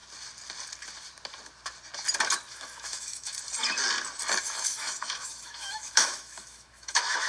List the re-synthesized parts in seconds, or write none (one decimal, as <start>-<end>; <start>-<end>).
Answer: 2.5-3.3; 4.4-7.3